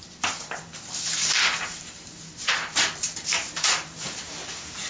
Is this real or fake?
fake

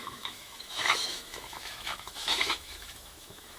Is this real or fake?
fake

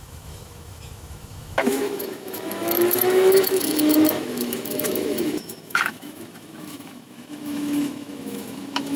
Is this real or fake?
fake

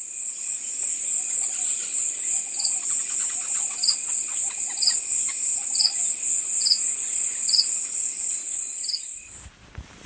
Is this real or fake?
real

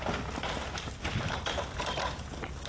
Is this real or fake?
real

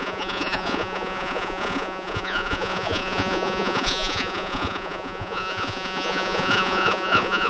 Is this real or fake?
fake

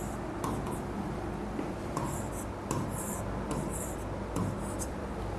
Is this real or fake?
real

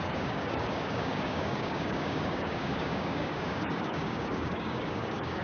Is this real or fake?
fake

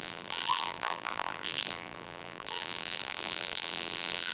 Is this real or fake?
fake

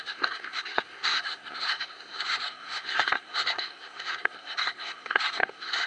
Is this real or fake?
fake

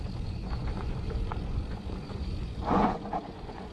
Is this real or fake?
fake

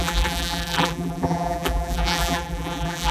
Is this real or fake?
fake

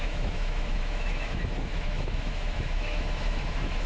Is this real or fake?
fake